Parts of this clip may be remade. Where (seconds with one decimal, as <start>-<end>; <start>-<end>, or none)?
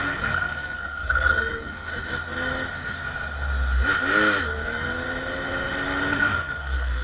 0.0-1.9; 6.1-7.0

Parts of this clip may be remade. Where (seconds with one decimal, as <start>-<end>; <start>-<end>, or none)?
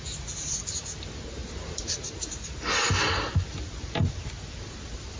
none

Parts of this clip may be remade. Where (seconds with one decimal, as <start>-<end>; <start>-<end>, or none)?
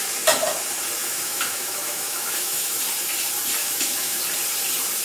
1.0-2.8; 3.6-4.2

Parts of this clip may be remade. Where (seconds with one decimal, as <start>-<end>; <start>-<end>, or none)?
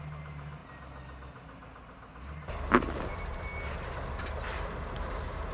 0.0-0.6; 3.0-3.5; 4.2-5.5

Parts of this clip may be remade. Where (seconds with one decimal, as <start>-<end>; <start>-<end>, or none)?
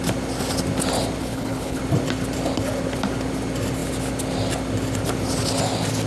1.2-1.8